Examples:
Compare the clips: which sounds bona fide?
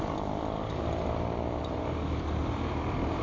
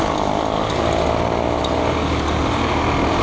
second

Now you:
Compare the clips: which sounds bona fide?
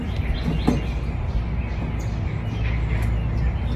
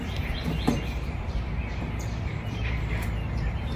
first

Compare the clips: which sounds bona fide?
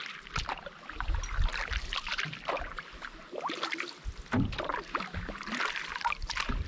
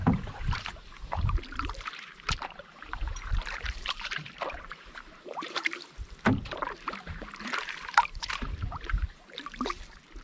first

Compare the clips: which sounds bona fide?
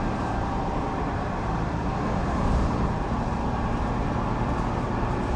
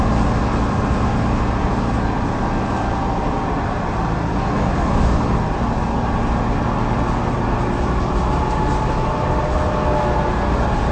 second